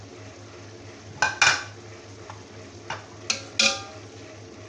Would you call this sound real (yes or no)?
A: yes